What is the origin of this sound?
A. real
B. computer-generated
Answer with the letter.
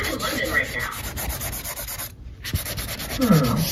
A